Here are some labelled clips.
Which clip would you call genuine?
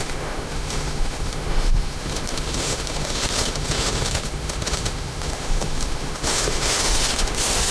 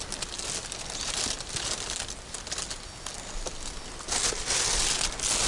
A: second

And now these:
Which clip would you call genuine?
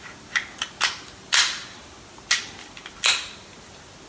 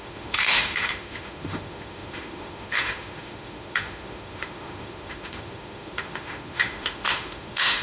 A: first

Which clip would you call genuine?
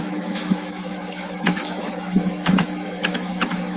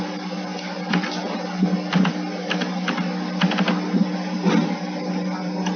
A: second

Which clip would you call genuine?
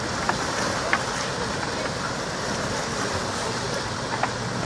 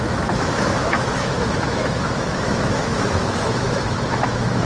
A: first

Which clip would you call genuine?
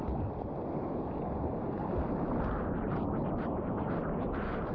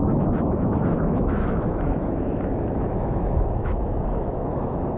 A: first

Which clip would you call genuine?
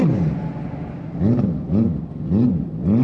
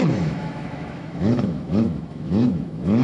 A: first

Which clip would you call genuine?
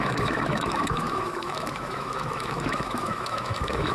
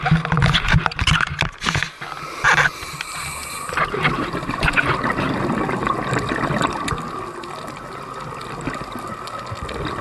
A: second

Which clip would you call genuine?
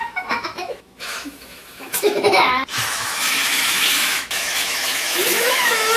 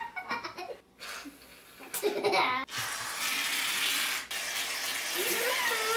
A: second